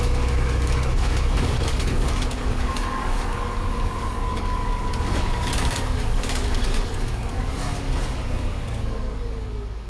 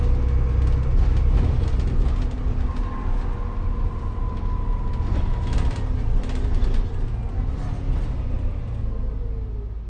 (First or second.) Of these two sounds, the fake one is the first